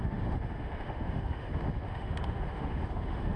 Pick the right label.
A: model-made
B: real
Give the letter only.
A